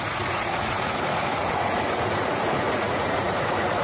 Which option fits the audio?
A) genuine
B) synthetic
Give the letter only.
B